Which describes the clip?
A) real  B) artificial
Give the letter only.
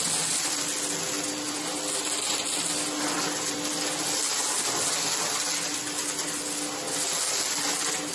A